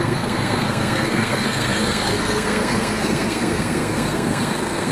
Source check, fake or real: fake